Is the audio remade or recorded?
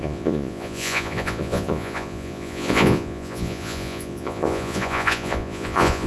remade